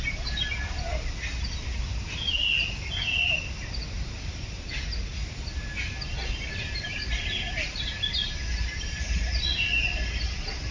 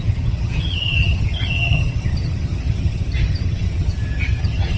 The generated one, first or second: second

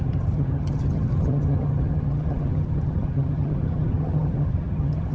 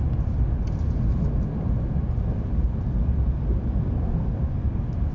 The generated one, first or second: first